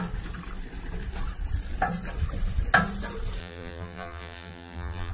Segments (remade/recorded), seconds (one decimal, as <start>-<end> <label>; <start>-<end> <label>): 0.0-3.4 recorded; 3.4-5.1 remade